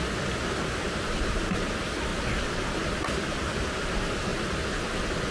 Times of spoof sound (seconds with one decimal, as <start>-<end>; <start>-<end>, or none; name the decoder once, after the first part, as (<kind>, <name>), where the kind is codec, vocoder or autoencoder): none